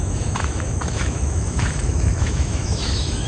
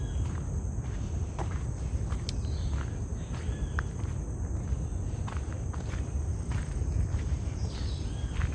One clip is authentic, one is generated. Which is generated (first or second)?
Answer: first